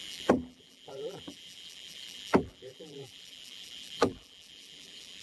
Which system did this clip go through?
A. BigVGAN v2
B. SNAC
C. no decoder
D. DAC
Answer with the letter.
A